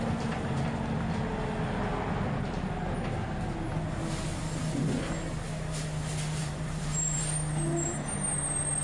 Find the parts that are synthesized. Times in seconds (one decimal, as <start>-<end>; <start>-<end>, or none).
6.4-7.2